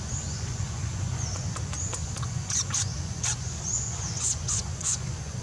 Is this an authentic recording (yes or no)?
no